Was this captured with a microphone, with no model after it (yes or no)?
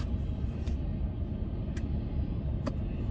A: yes